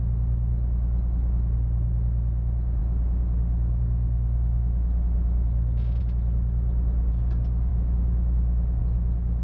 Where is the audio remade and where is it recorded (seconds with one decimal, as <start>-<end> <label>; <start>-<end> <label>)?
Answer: 0.0-7.7 recorded; 7.7-8.8 remade; 8.8-9.4 recorded